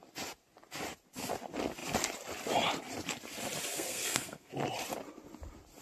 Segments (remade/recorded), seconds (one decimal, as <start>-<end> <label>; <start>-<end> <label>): 0.0-3.7 recorded; 3.7-4.5 remade; 4.5-5.8 recorded